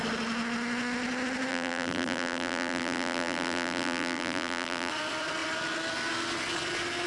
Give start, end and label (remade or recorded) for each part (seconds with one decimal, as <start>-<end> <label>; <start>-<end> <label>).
0.0-1.5 recorded; 1.5-4.9 remade; 4.9-7.1 recorded